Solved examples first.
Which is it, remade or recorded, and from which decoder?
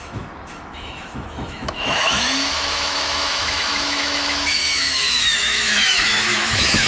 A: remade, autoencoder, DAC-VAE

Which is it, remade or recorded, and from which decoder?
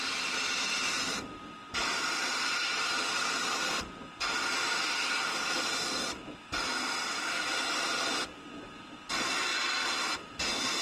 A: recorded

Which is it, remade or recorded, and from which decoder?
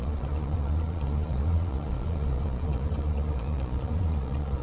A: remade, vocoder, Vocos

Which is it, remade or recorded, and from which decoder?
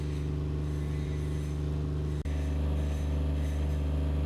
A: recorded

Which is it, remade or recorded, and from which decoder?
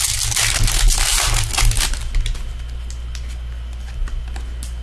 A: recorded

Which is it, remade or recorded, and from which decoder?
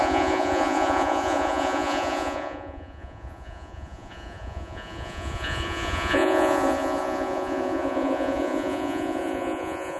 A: remade, vocoder, Vocos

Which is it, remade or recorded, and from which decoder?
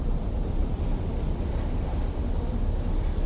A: recorded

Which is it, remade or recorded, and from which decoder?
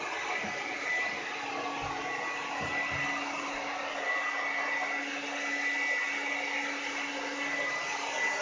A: recorded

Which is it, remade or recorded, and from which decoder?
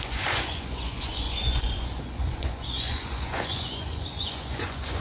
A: remade, vocoder, Vocos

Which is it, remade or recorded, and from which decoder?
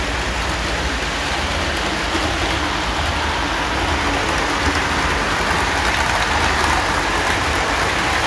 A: recorded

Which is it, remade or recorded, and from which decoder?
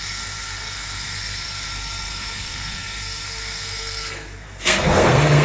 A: remade, codec, SNAC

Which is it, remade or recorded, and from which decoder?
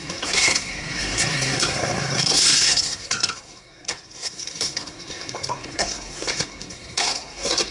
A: remade, codec, SNAC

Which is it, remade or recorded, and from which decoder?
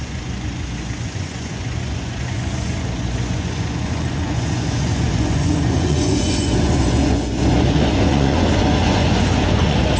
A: remade, vocoder, Vocos